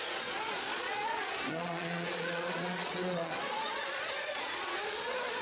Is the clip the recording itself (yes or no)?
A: no